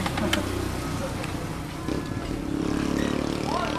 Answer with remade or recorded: recorded